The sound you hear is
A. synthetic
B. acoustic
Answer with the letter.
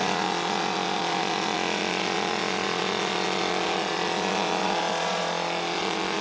A